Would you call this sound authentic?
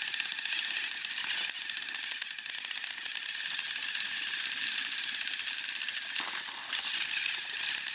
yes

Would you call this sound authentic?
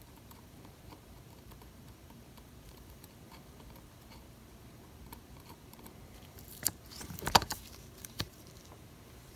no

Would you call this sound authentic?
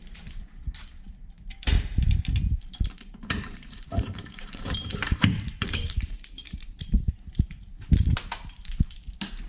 no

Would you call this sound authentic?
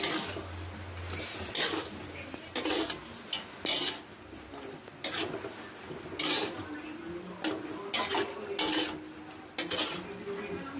yes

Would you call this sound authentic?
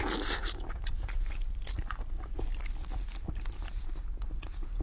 no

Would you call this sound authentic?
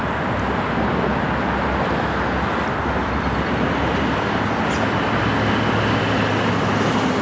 yes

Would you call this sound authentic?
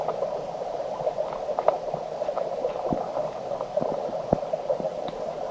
no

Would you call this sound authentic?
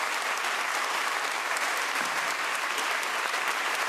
no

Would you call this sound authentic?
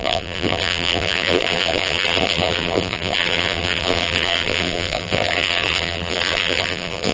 no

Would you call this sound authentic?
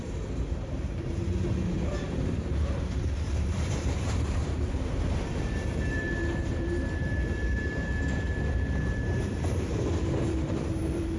no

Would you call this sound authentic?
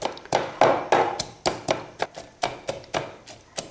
yes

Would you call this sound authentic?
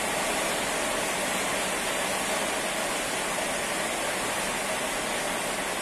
yes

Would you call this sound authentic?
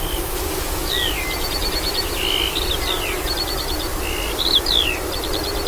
yes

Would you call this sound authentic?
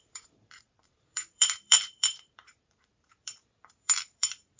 no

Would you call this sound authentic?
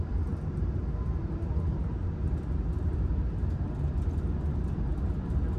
yes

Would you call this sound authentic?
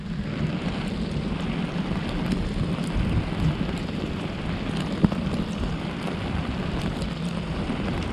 yes